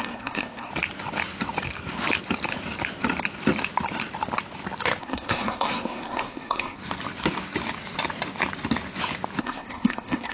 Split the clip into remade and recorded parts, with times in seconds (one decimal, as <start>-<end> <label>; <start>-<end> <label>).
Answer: 0.0-0.7 remade; 0.7-5.0 recorded; 5.0-6.8 remade; 6.8-9.4 recorded; 9.4-10.3 remade